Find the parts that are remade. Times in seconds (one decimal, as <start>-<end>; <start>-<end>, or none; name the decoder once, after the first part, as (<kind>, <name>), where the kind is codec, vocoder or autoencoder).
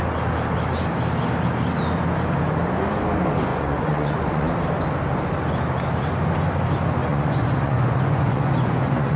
3.5-4.5 (vocoder, Vocos); 7.0-9.2